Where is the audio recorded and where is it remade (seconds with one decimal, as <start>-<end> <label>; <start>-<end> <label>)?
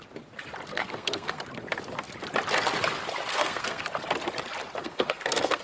0.0-0.7 recorded; 0.7-1.4 remade; 1.4-3.3 recorded; 3.3-3.9 remade; 3.9-4.8 recorded; 4.8-5.6 remade